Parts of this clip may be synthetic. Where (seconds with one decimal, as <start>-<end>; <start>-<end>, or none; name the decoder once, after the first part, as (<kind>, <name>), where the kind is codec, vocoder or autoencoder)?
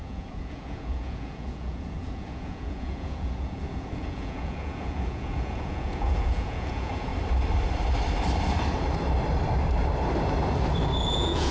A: 0.0-7.1 (vocoder, Vocos); 11.1-11.5